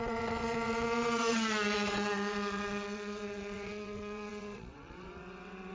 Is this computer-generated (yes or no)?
yes